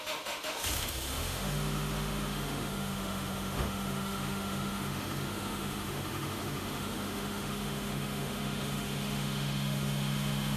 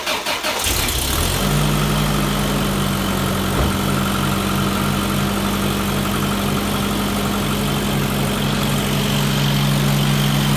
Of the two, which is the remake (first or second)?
first